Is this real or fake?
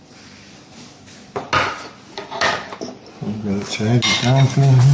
real